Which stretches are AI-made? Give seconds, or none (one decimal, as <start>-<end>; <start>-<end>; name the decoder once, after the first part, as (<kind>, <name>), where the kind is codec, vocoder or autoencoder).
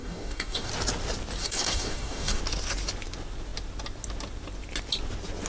0.0-0.7 (codec, DAC); 1.4-2.4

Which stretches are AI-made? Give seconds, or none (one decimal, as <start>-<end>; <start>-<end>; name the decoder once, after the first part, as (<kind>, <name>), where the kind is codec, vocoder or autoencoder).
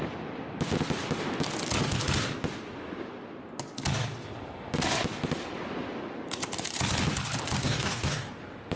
7.6-8.3 (codec, DAC)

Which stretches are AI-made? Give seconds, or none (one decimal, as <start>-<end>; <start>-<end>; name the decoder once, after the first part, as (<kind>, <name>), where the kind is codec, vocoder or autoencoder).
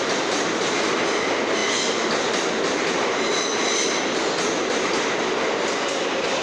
none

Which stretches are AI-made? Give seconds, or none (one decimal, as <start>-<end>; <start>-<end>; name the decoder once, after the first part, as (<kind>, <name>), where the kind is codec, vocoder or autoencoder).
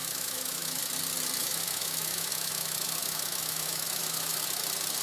0.0-0.8 (autoencoder, DAC-VAE); 1.4-4.4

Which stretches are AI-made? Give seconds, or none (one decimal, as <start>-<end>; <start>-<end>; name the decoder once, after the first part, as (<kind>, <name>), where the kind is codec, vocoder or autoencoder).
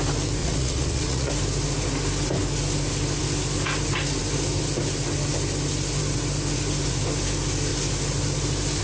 0.4-1.3 (vocoder, Vocos)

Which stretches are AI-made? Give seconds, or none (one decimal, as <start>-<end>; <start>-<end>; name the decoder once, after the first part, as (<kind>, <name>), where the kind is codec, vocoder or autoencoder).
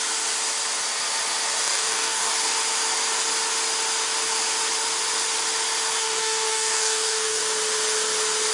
1.6-2.3 (codec, DAC); 6.0-7.4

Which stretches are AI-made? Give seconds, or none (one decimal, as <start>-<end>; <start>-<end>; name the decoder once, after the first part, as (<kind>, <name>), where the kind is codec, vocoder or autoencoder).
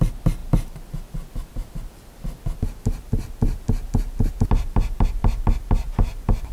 none